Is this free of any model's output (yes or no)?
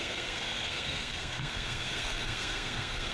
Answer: no